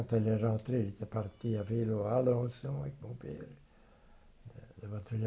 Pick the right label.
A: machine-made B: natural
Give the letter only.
B